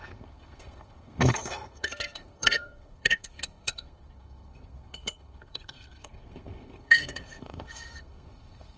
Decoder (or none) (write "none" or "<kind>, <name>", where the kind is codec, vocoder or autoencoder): codec, SNAC